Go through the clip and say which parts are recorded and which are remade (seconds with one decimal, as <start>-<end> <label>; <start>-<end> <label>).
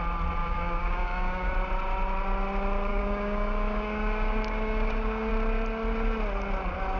0.0-0.4 recorded; 0.4-1.5 remade; 1.5-2.9 recorded; 2.9-5.3 remade; 5.3-7.0 recorded